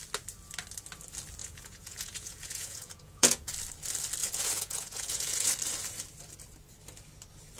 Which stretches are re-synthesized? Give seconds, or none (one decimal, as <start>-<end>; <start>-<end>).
1.4-3.5; 4.2-5.5